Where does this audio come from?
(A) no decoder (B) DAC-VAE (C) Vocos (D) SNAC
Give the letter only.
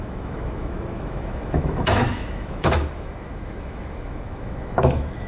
B